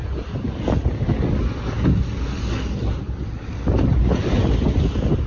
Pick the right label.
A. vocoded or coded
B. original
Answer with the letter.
B